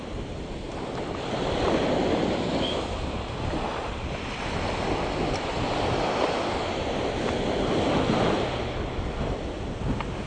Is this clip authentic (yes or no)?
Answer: yes